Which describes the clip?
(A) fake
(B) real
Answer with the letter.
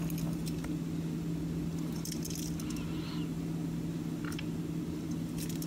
B